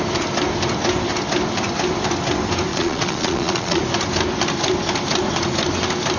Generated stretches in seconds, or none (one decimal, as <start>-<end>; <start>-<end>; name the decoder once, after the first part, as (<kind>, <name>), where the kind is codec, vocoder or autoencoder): 2.7-3.8 (vocoder, Vocos)